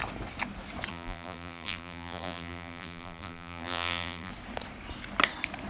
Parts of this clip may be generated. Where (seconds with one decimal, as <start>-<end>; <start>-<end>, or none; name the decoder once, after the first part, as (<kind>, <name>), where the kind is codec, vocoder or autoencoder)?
0.9-4.3 (vocoder, BigVGAN v2)